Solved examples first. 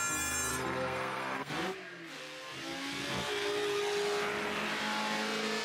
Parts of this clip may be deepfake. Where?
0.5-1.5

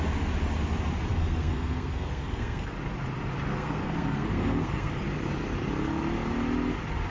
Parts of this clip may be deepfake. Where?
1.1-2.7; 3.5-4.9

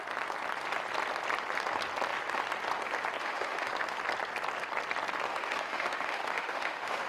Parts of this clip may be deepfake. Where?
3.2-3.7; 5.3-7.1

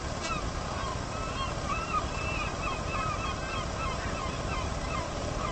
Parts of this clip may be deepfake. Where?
0.0-0.9; 1.5-2.5; 4.5-5.5

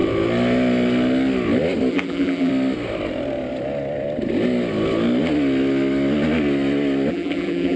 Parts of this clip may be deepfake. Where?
1.9-2.5; 7.1-7.8

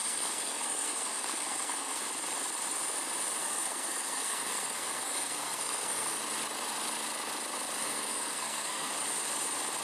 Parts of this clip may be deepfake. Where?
0.0-2.0; 3.4-6.2; 7.8-8.9

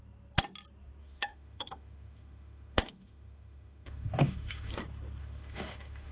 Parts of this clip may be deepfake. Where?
1.0-4.7; 5.2-6.1

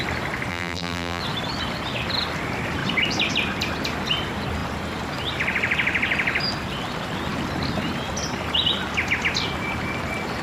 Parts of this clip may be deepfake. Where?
0.5-1.2